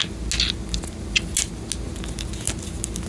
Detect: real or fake real